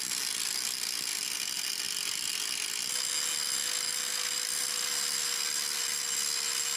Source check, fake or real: real